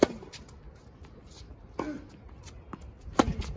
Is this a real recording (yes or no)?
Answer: yes